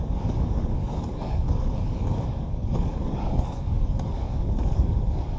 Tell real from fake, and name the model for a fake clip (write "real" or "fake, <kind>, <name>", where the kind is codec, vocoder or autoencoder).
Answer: fake, codec, DAC